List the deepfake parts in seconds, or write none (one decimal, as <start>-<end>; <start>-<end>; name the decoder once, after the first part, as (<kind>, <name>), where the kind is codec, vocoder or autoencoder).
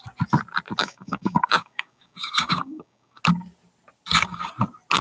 0.8-3.2 (codec, DAC)